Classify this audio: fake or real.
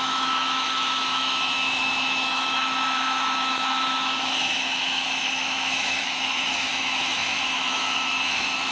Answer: fake